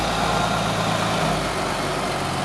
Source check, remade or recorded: recorded